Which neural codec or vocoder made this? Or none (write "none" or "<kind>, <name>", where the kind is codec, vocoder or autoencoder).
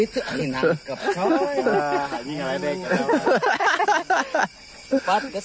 none